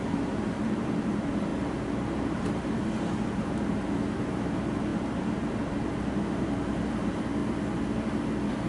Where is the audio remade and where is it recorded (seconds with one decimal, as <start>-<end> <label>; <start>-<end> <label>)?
0.0-7.4 remade; 7.4-8.7 recorded